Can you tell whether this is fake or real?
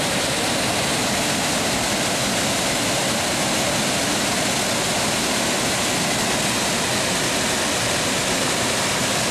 real